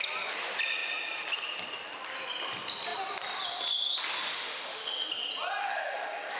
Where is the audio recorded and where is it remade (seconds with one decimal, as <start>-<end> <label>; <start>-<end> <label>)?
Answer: 0.0-4.3 recorded; 4.3-5.1 remade; 5.1-5.6 recorded; 5.6-6.4 remade